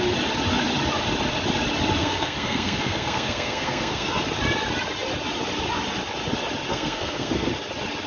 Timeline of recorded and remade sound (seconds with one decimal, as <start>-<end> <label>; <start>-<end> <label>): 0.0-2.0 recorded; 2.0-4.2 remade; 4.2-6.7 recorded; 6.7-7.5 remade; 7.5-8.1 recorded